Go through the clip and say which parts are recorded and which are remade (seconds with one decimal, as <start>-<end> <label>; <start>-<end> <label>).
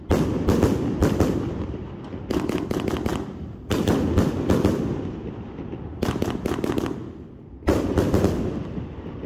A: 0.0-1.0 recorded; 1.0-2.3 remade; 2.3-3.1 recorded; 3.1-7.8 remade; 7.8-9.3 recorded